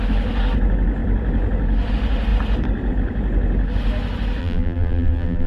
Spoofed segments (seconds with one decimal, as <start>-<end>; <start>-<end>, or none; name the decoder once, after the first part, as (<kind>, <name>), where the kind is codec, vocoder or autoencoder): 4.4-5.5 (vocoder, BigVGAN v2)